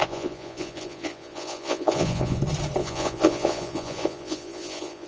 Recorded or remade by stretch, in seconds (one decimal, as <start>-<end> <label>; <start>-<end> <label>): 0.0-2.4 remade; 2.4-2.8 recorded; 2.8-5.1 remade